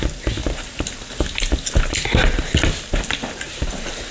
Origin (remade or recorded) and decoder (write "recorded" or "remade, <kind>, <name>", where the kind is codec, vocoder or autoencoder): recorded